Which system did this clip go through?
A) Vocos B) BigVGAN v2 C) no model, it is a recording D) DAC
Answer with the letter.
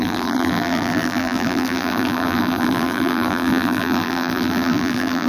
B